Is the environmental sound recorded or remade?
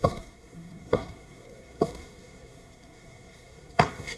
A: remade